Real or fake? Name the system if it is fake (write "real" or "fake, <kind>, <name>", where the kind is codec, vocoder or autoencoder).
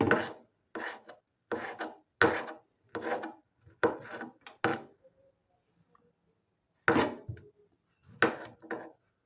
real